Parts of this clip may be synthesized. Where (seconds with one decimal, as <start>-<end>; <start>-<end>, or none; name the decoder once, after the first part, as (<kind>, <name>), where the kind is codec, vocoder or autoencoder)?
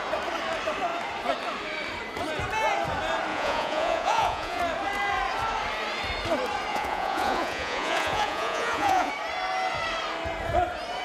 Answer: 3.3-4.6 (vocoder, Vocos); 6.7-9.1